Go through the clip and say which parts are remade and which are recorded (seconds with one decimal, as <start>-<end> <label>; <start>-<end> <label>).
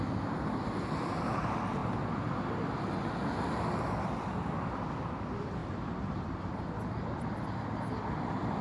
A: 0.0-1.8 remade; 1.8-4.0 recorded; 4.0-8.6 remade